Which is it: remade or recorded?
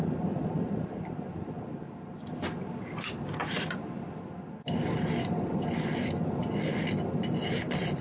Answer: remade